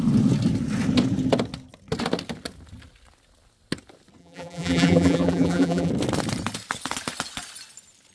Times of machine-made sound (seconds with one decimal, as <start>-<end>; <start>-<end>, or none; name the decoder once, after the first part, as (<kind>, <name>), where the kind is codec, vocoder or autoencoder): 4.2-5.9 (vocoder, BigVGAN v2)

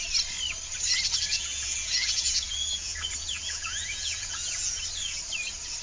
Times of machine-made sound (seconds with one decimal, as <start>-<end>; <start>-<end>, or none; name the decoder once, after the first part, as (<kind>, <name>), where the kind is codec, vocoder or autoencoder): 1.3-4.8 (vocoder, Vocos)

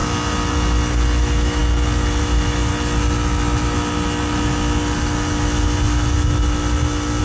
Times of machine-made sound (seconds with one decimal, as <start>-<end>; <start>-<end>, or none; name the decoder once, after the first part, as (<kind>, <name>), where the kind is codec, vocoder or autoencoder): 1.2-1.6 (autoencoder, DAC-VAE); 2.2-2.7

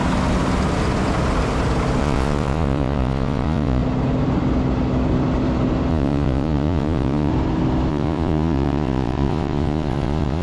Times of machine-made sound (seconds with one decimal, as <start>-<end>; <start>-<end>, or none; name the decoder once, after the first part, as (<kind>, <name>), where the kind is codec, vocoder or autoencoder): 2.0-3.8 (vocoder, Vocos); 5.9-7.3; 7.9-10.4

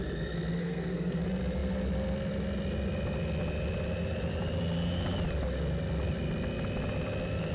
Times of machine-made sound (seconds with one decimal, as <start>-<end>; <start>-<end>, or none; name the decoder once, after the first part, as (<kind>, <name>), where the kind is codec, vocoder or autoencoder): 0.6-1.2 (codec, SNAC)

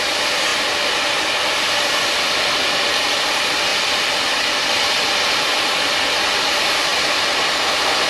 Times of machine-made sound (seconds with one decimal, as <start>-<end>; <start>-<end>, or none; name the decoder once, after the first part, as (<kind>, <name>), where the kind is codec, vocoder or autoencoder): 0.0-0.5 (vocoder, BigVGAN v2); 1.8-3.7; 6.5-6.9

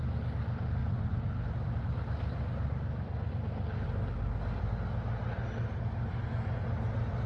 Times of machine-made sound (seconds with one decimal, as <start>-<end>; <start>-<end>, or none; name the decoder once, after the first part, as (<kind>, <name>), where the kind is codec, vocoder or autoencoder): none